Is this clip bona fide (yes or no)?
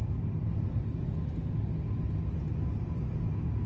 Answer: yes